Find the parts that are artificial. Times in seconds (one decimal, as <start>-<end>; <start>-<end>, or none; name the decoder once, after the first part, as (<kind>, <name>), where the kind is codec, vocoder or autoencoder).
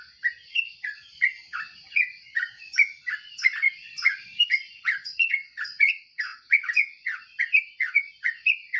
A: 0.0-8.8 (vocoder, Vocos)